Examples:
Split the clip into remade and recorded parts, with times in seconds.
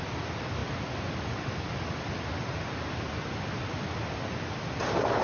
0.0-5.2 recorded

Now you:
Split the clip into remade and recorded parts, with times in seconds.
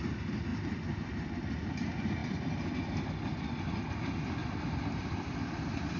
0.0-0.5 recorded; 0.5-1.5 remade; 1.5-4.4 recorded; 4.4-6.0 remade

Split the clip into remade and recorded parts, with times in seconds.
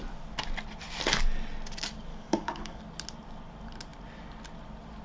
0.0-2.1 recorded; 2.1-2.8 remade; 2.8-5.0 recorded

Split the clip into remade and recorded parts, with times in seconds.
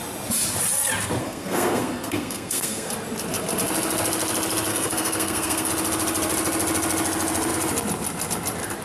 0.0-1.2 recorded; 1.2-2.9 remade; 2.9-4.7 recorded; 4.7-5.7 remade; 5.7-8.8 recorded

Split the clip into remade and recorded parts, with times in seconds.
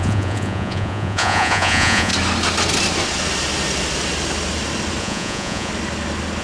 0.0-2.1 remade; 2.1-5.0 recorded; 5.0-5.7 remade; 5.7-6.4 recorded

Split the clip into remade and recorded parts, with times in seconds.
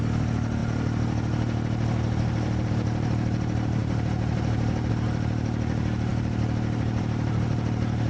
0.0-8.1 recorded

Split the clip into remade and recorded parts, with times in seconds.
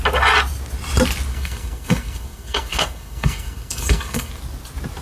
0.0-1.3 recorded; 1.3-4.3 remade; 4.3-5.0 recorded